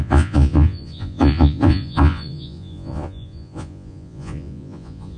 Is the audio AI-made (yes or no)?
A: yes